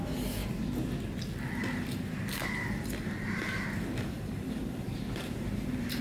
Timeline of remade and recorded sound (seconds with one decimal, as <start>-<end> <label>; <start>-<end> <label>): 0.0-0.4 remade; 0.4-1.8 recorded; 1.8-6.0 remade